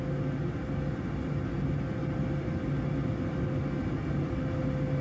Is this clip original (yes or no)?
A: yes